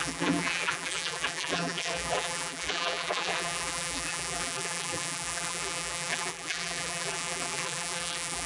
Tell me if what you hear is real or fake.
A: fake